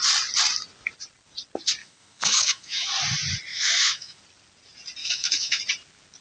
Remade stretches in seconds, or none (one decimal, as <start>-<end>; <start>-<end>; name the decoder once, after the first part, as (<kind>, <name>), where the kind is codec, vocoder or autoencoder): 1.8-2.9 (autoencoder, DAC-VAE); 3.5-4.2; 5.0-5.6